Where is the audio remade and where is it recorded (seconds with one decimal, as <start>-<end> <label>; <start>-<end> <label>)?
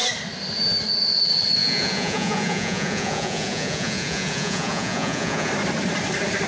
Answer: 0.0-1.6 recorded; 1.6-5.5 remade; 5.5-6.5 recorded